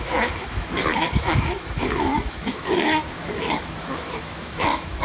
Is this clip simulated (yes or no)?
yes